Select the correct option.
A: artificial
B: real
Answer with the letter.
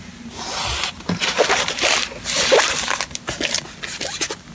B